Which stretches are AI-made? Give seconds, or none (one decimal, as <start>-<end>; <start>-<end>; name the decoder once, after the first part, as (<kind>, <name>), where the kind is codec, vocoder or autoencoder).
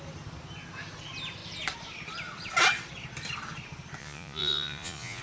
4.0-5.2 (vocoder, Vocos)